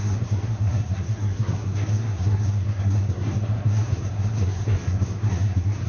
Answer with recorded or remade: remade